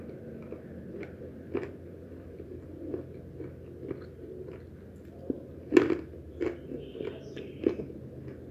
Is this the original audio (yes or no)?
yes